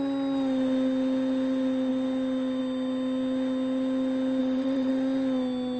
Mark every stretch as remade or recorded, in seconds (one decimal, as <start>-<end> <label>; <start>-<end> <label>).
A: 0.0-4.4 recorded; 4.4-4.9 remade; 4.9-5.8 recorded